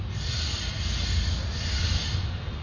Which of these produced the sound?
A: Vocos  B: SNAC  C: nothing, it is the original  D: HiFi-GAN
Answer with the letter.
C